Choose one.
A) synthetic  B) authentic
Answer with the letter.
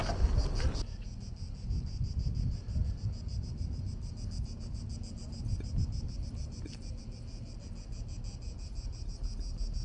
B